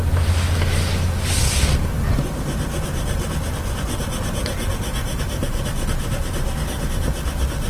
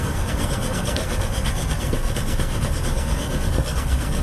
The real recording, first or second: first